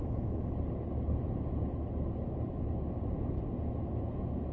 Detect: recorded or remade recorded